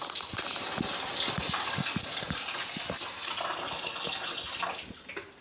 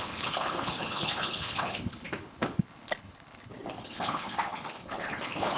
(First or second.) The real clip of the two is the first